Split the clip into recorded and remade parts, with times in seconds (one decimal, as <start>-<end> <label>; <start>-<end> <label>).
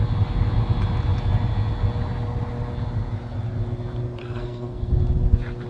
0.0-4.2 recorded; 4.2-5.0 remade; 5.0-5.7 recorded